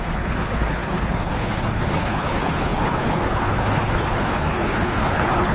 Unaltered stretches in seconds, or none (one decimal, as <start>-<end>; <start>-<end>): none